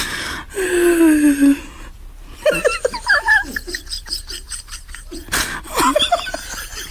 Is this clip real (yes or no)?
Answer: yes